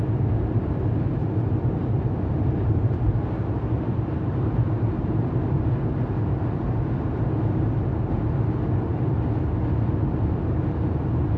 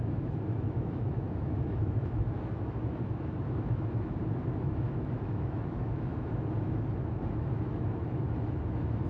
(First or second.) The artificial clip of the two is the second